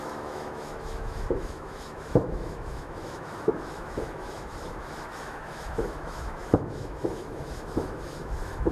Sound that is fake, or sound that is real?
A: fake